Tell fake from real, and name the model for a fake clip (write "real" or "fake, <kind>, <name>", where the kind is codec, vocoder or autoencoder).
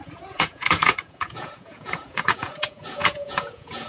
fake, vocoder, Vocos